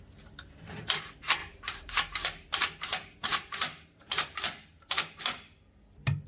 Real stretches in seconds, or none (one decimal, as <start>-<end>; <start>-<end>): 0.0-1.4; 5.2-6.3